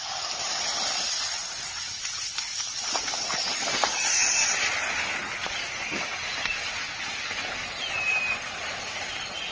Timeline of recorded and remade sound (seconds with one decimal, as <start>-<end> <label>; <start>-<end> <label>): 0.0-9.5 recorded